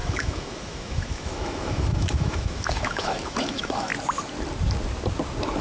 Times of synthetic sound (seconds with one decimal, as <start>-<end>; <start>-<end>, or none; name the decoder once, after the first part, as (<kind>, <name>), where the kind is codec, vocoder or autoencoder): 0.0-3.9 (autoencoder, DAC-VAE)